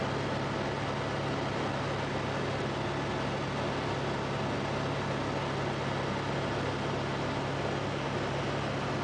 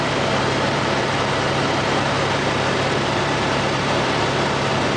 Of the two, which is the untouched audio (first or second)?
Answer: first